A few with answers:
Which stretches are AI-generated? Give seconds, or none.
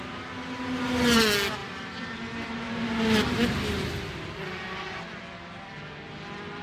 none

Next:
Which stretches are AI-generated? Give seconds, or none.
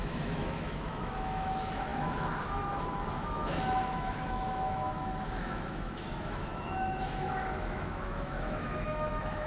0.0-9.5 (autoencoder, DAC-VAE)